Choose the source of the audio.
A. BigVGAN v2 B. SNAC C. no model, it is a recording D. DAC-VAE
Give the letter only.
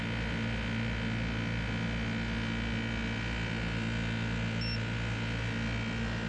C